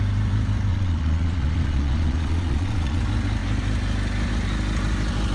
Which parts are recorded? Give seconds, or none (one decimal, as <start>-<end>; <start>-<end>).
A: 0.0-0.7; 3.0-5.3